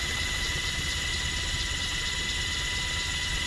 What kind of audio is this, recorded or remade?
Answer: recorded